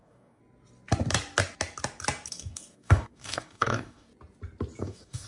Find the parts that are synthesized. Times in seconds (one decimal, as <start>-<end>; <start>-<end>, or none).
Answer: 0.0-0.4; 2.3-4.1; 4.8-5.3